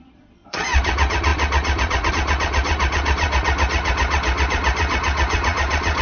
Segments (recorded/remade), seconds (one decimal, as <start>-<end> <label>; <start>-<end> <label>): 0.0-6.0 remade